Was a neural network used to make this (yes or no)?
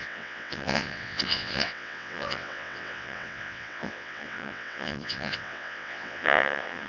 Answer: yes